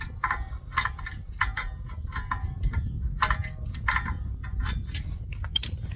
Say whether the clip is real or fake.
real